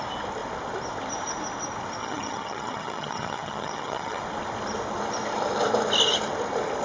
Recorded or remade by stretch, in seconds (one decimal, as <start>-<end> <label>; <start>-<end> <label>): 0.0-2.0 recorded; 2.0-4.2 remade; 4.2-6.8 recorded